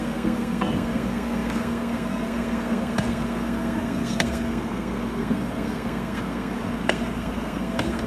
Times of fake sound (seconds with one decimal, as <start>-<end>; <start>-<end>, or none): 0.0-8.1